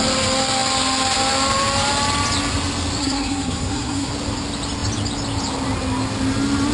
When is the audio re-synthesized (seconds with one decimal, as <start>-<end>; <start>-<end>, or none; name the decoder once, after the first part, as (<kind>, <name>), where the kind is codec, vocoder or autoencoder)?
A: 3.0-4.1 (codec, SNAC)

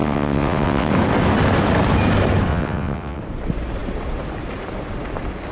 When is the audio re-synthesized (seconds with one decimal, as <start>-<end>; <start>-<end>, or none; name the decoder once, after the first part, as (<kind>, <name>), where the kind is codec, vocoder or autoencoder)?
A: 0.0-0.9 (vocoder, WaveNeXt); 2.5-3.2

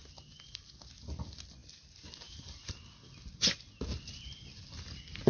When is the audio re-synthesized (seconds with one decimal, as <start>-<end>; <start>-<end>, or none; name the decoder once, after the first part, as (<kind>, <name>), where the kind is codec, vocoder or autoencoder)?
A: none

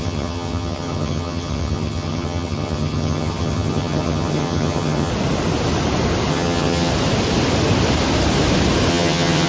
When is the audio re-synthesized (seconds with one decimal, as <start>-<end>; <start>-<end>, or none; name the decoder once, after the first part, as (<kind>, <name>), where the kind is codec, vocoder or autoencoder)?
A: 0.0-5.1 (vocoder, HiFi-GAN); 6.3-6.9; 8.9-9.5

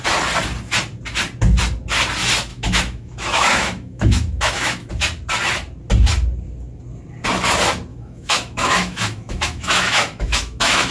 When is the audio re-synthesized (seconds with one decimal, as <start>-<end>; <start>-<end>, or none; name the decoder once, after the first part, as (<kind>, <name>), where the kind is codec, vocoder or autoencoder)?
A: 2.5-4.9 (autoencoder, DAC-VAE); 7.9-10.9

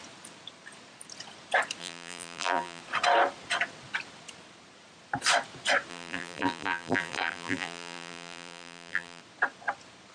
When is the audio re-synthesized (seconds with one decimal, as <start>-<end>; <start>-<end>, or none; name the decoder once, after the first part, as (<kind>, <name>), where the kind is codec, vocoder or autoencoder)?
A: 1.8-2.8 (vocoder, BigVGAN v2); 5.9-9.2